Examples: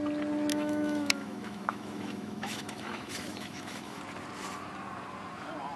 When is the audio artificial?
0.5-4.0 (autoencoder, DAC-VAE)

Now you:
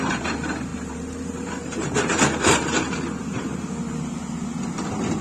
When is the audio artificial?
0.7-3.7 (vocoder, BigVGAN v2)

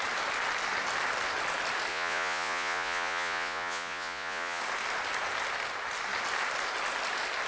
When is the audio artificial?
1.9-4.6 (vocoder, Vocos)

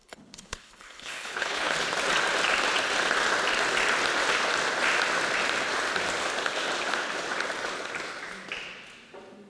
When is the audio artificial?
0.0-1.7 (codec, HILCodec)

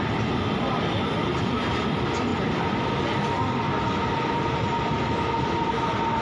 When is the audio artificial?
none

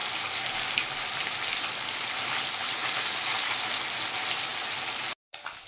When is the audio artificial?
none